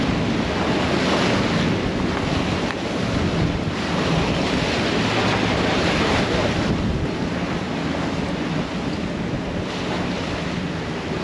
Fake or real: real